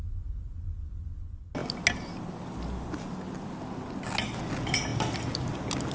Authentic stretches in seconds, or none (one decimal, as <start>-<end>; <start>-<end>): 0.0-5.9